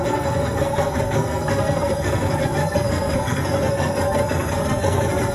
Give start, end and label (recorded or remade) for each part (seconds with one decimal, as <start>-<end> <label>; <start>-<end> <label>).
0.0-5.3 remade